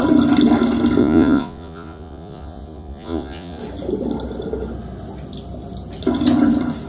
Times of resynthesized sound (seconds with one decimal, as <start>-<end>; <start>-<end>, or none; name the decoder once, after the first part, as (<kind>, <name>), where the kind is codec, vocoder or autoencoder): 1.0-3.6 (vocoder, Vocos)